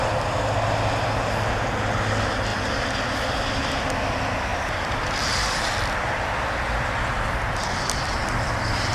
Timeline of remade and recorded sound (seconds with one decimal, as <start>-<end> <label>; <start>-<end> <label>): 0.0-4.5 recorded; 4.5-6.2 remade; 6.2-8.9 recorded

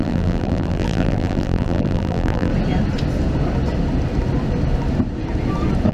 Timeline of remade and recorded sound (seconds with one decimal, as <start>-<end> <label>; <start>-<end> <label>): 0.0-2.5 remade; 2.5-5.9 recorded

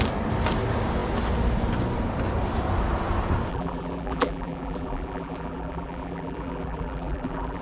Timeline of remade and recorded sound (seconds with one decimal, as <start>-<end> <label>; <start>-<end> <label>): 0.0-3.5 recorded; 3.5-7.6 remade

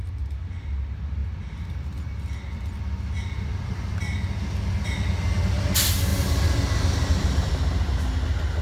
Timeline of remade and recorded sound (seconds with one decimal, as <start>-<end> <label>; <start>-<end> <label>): 0.0-6.1 recorded; 6.1-7.5 remade; 7.5-8.6 recorded

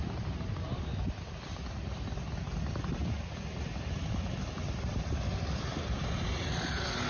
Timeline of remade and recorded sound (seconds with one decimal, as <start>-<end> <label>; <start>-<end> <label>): 0.0-3.0 recorded; 3.0-5.8 remade; 5.8-7.1 recorded

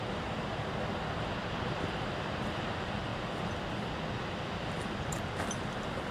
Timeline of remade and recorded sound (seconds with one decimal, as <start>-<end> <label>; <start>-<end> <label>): 0.0-6.1 recorded